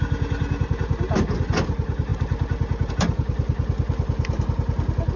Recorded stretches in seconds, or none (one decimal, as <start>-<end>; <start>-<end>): 0.0-5.2